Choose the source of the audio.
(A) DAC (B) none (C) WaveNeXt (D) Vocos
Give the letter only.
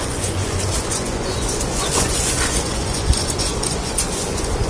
D